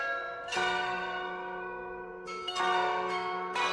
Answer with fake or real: fake